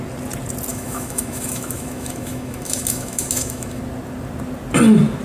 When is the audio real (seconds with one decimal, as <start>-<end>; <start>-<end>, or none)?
0.0-0.7; 3.8-5.2